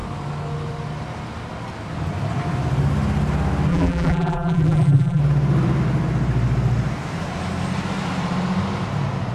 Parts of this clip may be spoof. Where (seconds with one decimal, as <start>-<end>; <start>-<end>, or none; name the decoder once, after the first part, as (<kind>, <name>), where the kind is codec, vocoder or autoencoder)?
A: 3.7-5.2 (vocoder, BigVGAN v2)